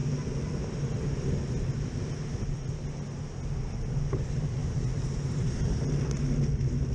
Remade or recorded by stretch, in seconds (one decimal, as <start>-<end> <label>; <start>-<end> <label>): 0.0-4.6 recorded; 4.6-5.9 remade; 5.9-6.9 recorded